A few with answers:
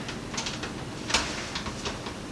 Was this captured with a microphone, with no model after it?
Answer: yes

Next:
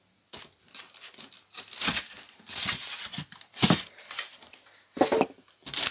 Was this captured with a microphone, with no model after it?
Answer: yes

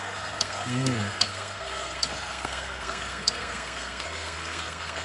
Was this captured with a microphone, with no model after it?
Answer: no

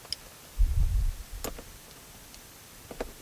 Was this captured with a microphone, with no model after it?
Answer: yes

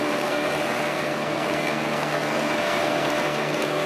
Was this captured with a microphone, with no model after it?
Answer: no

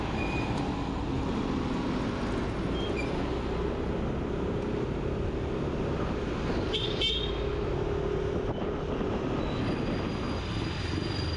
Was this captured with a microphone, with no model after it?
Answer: yes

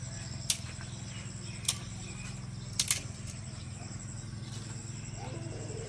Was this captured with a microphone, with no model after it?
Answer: yes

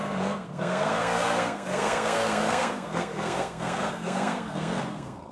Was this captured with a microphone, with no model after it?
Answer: no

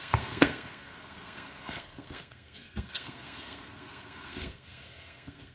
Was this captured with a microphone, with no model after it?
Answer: no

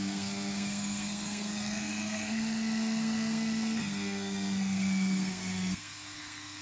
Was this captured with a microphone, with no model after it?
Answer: no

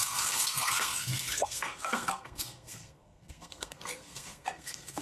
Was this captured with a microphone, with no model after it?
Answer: no